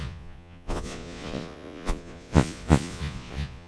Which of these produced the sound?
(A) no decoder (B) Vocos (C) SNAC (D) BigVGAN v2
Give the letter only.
B